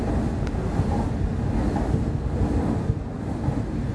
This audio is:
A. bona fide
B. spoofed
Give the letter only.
A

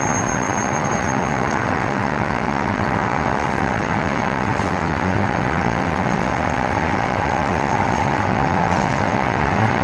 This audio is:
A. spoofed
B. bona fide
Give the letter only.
A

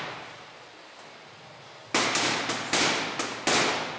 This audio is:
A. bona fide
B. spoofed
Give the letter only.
A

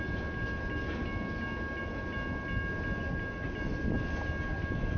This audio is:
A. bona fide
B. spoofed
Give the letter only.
A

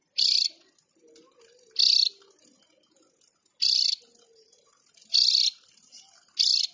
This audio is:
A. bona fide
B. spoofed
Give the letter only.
A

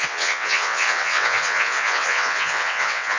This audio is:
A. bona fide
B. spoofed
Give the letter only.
B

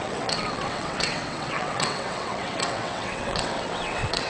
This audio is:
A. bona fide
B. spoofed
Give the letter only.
B